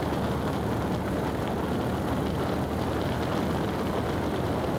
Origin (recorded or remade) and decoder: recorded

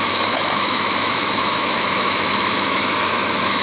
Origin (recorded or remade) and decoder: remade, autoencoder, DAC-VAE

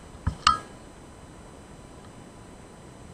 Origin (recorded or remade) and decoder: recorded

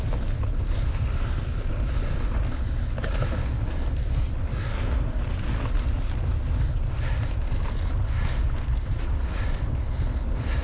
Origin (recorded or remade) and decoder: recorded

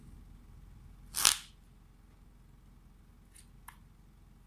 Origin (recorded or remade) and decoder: recorded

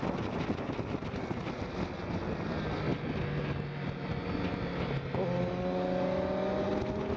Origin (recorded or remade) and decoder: recorded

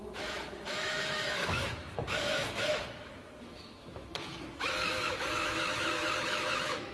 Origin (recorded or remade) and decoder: remade, autoencoder, DAC-VAE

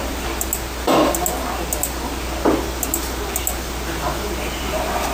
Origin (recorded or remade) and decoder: recorded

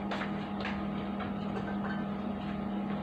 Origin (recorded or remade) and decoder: recorded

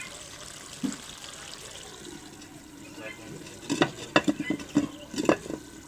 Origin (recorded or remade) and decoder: recorded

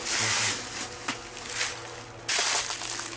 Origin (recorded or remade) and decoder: recorded